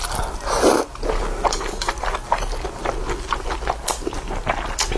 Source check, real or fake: real